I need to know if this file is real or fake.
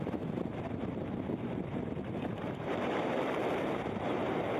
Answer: fake